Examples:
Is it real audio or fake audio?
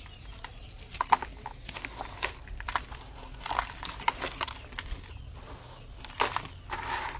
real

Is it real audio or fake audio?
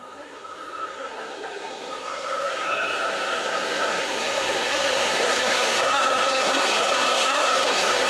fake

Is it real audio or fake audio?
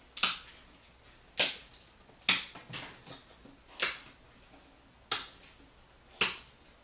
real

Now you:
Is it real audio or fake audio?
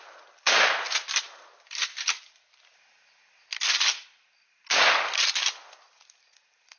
real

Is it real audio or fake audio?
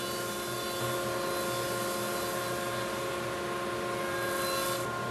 real